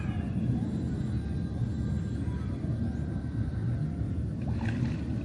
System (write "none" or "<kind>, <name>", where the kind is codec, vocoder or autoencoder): none